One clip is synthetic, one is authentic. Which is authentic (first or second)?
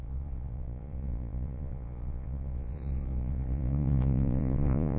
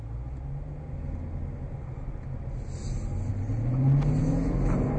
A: second